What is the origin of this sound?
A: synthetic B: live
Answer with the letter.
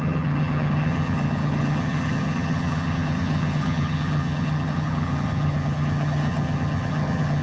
A